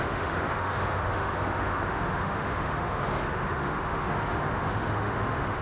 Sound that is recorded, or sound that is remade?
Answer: remade